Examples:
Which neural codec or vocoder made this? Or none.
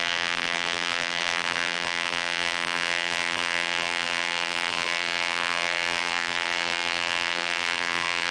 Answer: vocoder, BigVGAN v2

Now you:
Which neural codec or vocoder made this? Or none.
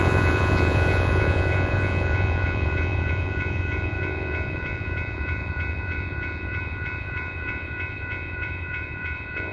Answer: vocoder, Vocos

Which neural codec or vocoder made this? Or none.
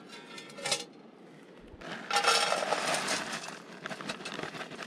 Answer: none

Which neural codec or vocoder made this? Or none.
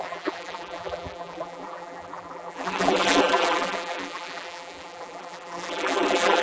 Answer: vocoder, BigVGAN v2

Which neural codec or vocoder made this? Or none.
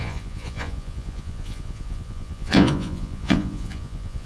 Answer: vocoder, Vocos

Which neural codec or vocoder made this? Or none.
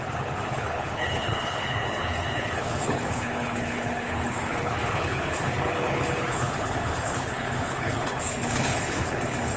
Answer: codec, HILCodec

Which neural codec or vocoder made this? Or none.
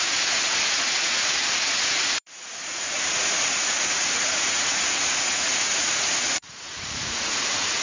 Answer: vocoder, Vocos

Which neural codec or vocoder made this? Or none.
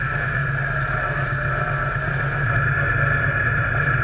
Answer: none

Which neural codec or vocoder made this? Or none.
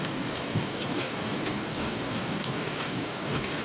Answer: codec, DAC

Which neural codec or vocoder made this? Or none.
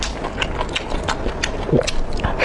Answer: none